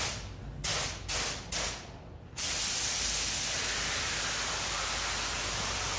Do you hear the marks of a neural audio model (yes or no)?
no